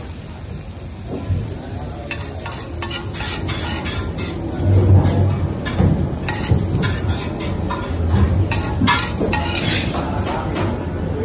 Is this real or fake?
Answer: real